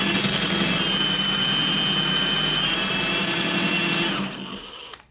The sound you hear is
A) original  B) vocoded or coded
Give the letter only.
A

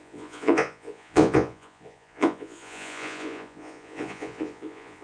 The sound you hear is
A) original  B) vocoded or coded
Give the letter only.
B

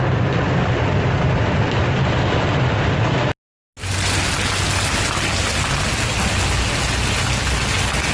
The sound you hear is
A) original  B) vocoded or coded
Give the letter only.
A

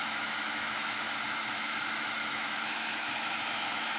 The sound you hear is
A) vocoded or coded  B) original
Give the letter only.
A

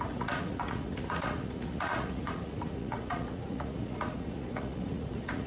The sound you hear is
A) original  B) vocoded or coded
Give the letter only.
B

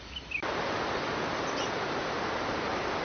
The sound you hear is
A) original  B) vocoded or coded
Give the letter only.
B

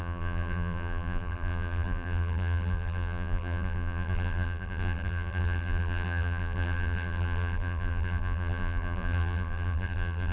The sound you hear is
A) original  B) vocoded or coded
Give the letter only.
B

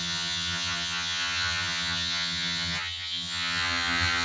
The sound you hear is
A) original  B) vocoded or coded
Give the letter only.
B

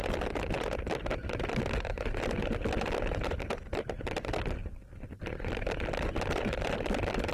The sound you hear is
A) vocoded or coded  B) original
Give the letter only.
B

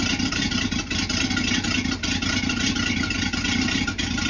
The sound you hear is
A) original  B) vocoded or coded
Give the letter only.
A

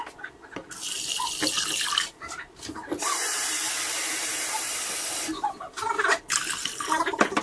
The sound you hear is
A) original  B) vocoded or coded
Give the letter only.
A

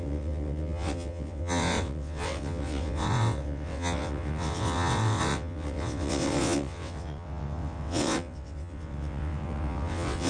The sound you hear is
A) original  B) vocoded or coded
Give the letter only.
B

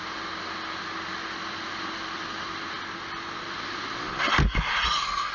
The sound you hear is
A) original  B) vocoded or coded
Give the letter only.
A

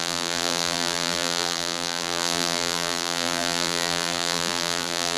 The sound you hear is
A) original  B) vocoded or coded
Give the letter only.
B